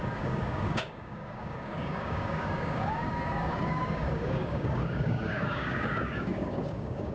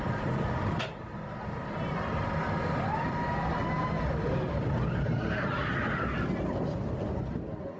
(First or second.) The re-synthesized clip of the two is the first